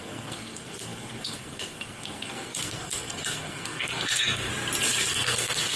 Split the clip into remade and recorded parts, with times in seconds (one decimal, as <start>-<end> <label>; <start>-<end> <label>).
0.0-4.5 remade; 4.5-5.1 recorded; 5.1-5.8 remade

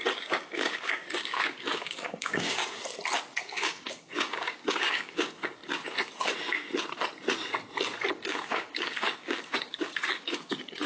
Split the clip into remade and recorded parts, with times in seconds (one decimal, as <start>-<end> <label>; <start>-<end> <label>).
0.0-2.8 remade; 2.8-3.4 recorded; 3.4-5.6 remade; 5.6-8.1 recorded; 8.1-10.9 remade

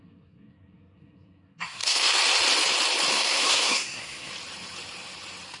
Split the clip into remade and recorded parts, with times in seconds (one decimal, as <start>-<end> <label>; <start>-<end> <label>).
0.0-2.2 remade; 2.2-3.1 recorded; 3.1-4.3 remade; 4.3-5.6 recorded

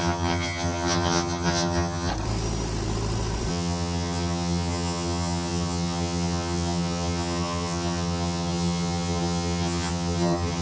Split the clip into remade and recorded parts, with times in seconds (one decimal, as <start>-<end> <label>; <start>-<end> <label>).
0.0-2.1 remade; 2.1-3.5 recorded; 3.5-10.6 remade